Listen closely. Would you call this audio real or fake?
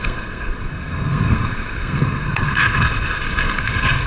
fake